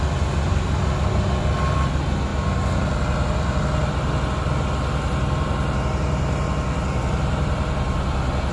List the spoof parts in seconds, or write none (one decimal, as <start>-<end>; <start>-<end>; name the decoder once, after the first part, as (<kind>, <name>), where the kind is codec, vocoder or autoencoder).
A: none